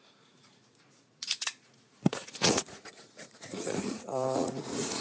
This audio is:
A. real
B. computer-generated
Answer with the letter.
B